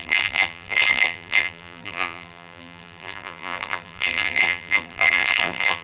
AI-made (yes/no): yes